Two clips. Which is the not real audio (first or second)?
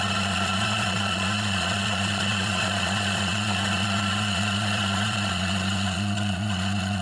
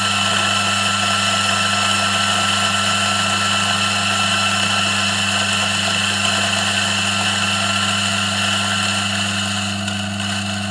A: first